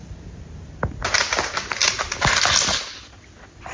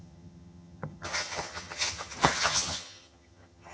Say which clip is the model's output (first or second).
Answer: second